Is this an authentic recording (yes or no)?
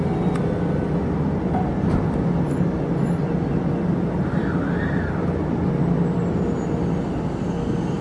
yes